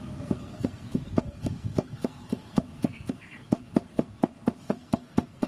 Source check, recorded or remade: remade